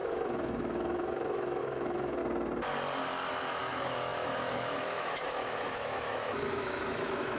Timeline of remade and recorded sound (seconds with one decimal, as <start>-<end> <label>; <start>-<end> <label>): 0.0-2.2 remade; 2.2-3.3 recorded; 3.3-7.4 remade